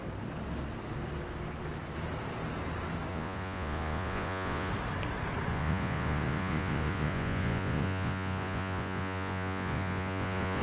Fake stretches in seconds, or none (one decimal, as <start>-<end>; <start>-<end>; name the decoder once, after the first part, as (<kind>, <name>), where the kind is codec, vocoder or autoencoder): 3.1-4.7 (vocoder, Vocos); 5.5-10.6